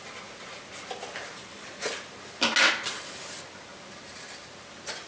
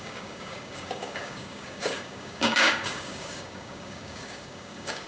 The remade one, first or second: second